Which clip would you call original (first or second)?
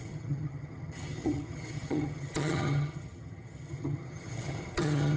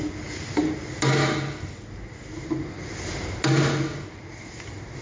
second